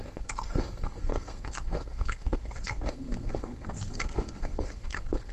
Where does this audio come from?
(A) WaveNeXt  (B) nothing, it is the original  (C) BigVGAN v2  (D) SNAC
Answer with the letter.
D